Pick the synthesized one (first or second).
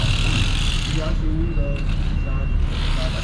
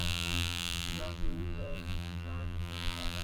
second